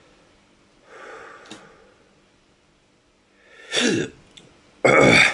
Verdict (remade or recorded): recorded